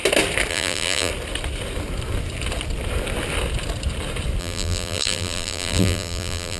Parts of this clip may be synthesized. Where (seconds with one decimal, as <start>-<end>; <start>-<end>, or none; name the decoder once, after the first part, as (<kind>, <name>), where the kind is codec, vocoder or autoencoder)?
0.5-1.1 (vocoder, BigVGAN v2); 4.4-6.6